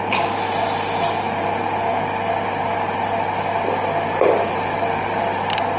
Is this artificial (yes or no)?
no